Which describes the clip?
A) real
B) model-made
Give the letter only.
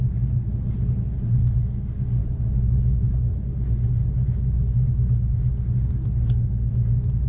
A